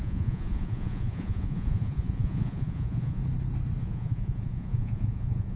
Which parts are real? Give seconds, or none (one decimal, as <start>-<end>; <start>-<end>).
3.2-3.8